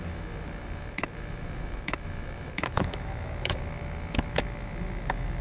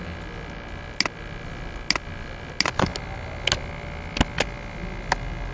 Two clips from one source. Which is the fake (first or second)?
first